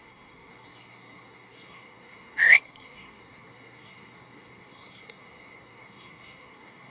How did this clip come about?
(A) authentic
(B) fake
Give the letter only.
B